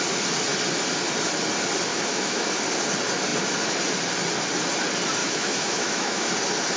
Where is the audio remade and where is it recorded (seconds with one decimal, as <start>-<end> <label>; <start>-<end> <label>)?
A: 0.0-1.9 recorded; 1.9-2.5 remade; 2.5-5.2 recorded; 5.2-6.3 remade; 6.3-6.8 recorded